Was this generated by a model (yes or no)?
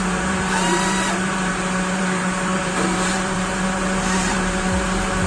yes